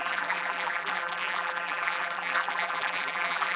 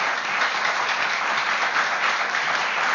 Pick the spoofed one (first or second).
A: first